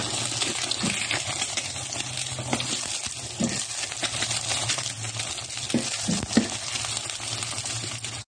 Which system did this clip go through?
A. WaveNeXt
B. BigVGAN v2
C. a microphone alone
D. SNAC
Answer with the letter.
C